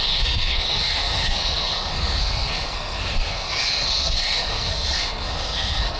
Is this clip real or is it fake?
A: fake